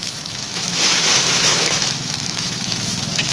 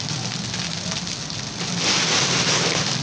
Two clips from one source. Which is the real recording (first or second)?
second